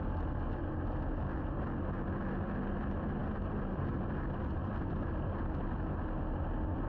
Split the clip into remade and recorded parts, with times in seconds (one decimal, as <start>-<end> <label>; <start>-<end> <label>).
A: 0.0-6.9 recorded